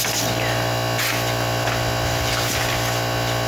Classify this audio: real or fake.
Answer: real